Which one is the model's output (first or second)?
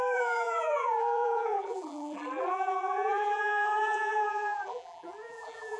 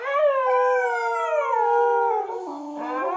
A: first